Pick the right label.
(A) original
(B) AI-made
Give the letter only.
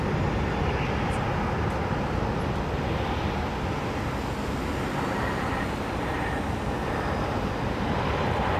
A